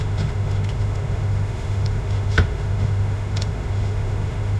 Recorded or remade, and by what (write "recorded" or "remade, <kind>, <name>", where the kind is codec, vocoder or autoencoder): remade, autoencoder, DAC-VAE